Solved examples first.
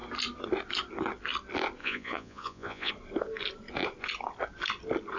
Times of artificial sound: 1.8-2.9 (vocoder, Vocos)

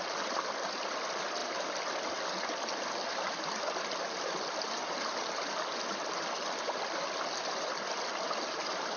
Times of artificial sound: none

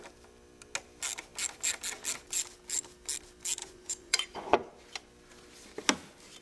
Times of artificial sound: 3.6-4.7 (vocoder, Vocos)

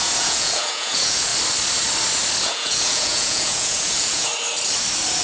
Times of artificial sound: 0.0-1.3 (vocoder, Vocos); 2.4-4.3